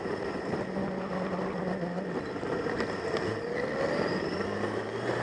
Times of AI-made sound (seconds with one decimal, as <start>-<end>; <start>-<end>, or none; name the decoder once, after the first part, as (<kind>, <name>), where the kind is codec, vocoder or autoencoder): 0.0-0.8 (vocoder, BigVGAN v2); 3.9-5.2